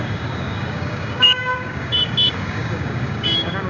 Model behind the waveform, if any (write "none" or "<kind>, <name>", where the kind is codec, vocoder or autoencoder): codec, DAC